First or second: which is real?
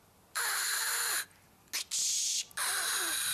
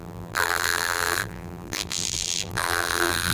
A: first